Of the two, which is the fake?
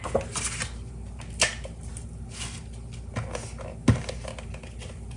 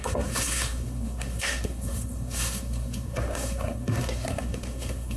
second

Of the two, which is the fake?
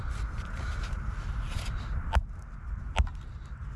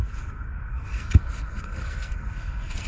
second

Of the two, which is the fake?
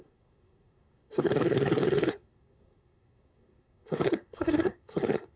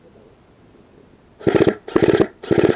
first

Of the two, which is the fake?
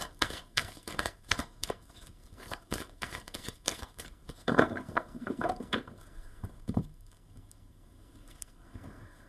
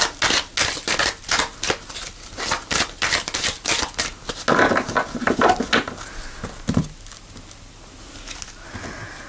first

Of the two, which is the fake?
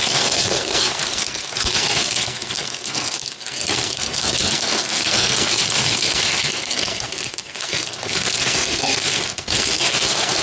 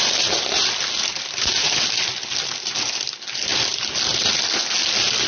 first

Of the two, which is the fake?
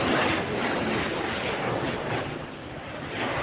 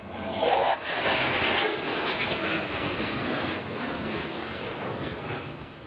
second